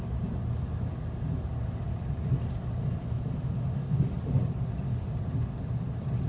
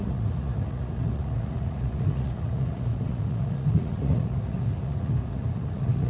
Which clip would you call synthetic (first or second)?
second